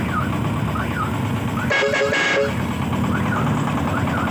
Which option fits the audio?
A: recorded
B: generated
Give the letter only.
A